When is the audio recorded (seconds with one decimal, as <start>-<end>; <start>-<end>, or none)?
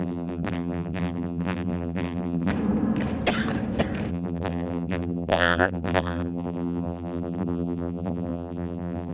2.5-4.1